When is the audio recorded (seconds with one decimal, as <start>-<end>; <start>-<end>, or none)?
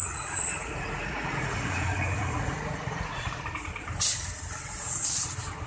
3.4-5.7